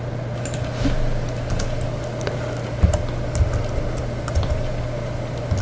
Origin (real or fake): real